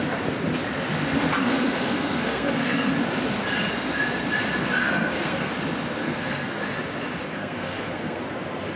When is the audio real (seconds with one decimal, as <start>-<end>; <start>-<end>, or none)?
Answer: 0.0-1.4; 2.9-4.8; 5.5-6.0; 6.6-7.3; 8.2-8.8